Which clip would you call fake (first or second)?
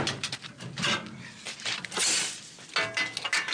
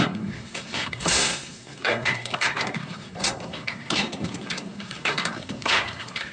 second